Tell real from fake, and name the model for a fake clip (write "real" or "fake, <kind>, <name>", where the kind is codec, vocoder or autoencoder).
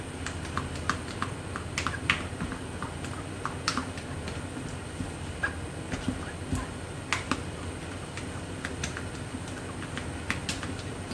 real